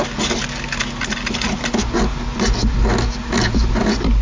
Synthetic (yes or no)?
no